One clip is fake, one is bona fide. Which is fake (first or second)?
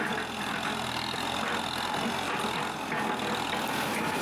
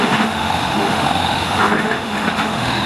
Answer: second